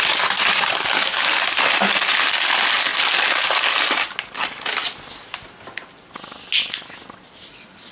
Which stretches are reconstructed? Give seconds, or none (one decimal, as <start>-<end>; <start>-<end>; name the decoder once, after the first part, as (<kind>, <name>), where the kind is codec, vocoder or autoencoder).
none